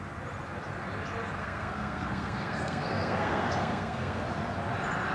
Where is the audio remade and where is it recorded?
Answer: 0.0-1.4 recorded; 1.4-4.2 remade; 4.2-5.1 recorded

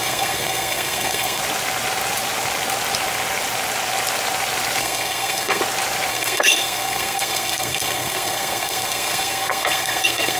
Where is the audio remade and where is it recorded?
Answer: 0.0-1.4 remade; 1.4-4.8 recorded; 4.8-5.6 remade; 5.6-6.1 recorded; 6.1-10.4 remade

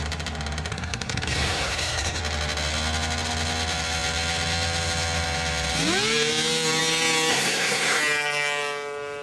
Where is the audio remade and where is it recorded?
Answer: 0.0-0.7 recorded; 0.7-2.2 remade; 2.2-7.3 recorded; 7.3-8.0 remade; 8.0-9.2 recorded